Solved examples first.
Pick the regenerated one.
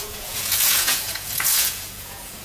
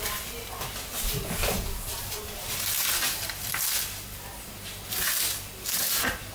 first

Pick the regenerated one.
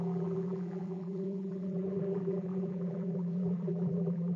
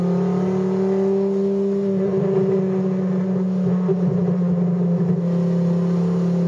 first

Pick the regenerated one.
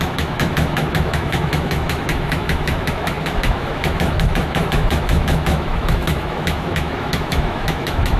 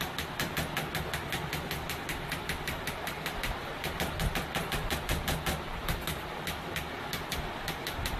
first